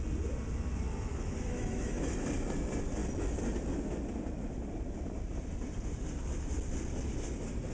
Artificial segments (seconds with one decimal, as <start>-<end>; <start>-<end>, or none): 1.1-2.2